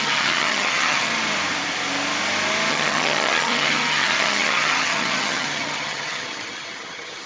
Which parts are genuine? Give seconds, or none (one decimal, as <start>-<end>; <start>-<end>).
1.1-2.7

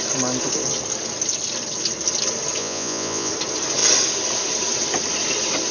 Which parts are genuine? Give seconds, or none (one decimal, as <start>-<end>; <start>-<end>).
0.0-2.6; 3.3-5.7

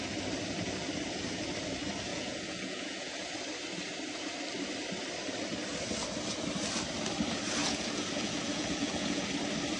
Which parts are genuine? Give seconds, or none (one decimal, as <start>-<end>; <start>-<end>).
0.0-2.1; 3.3-7.6; 9.3-9.8